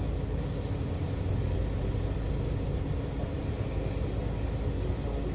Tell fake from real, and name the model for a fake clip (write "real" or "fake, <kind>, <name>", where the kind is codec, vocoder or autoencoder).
real